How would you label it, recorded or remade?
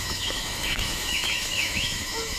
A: remade